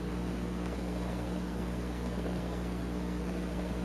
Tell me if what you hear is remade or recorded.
remade